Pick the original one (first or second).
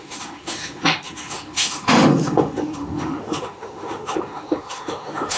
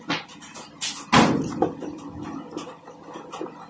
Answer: second